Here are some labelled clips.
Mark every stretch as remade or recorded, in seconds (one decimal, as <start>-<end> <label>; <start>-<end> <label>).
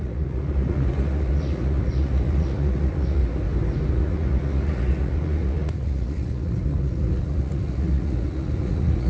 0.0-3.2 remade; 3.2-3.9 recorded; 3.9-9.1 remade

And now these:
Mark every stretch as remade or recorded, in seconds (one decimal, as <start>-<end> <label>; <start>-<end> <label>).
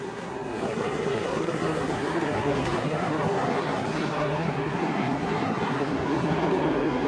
0.0-7.1 remade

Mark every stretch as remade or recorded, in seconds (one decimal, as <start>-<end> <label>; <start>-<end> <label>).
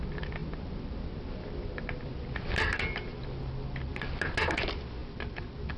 0.0-5.8 recorded